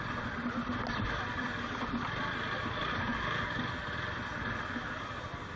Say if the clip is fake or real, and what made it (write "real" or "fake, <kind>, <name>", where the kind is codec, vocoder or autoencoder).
real